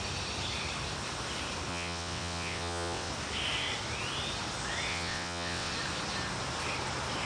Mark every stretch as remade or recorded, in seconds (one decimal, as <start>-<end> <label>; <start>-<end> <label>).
0.0-1.7 recorded; 1.7-3.1 remade; 3.1-4.9 recorded; 4.9-5.7 remade; 5.7-7.3 recorded